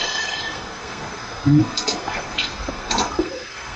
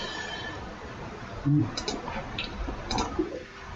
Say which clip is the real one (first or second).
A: second